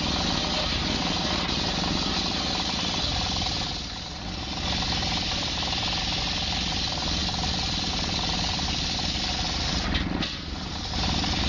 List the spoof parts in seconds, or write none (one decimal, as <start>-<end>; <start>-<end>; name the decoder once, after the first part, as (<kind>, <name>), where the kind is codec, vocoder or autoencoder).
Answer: none